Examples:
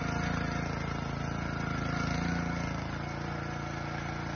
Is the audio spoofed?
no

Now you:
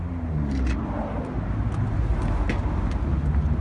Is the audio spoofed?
no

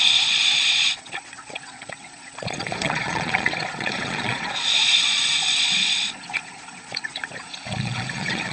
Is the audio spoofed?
yes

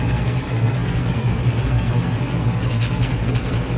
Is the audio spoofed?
yes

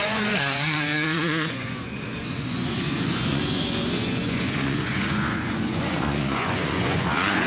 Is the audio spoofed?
yes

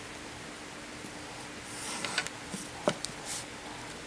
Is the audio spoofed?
no